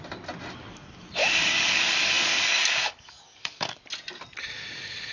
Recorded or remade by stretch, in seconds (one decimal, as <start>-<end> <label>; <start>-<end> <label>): 0.0-1.2 recorded; 1.2-3.8 remade; 3.8-5.1 recorded